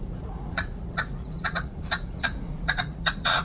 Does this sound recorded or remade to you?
remade